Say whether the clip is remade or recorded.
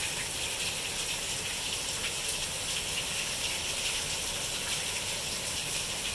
recorded